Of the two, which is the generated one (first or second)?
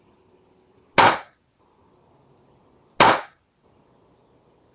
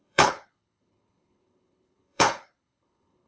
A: second